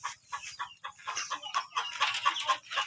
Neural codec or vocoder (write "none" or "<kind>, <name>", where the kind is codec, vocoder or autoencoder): none